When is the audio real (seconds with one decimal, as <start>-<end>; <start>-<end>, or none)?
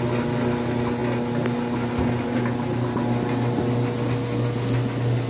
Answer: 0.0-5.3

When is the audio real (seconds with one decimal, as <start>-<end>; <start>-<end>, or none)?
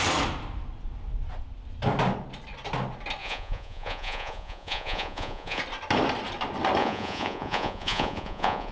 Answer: 0.0-3.2; 5.6-6.8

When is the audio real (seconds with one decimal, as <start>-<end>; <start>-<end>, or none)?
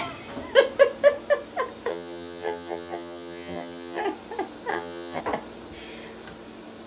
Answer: 0.0-1.9; 4.0-4.7; 5.2-6.9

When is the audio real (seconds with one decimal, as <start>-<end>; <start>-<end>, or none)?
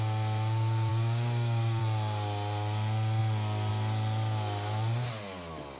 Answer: 0.0-0.9; 1.8-5.8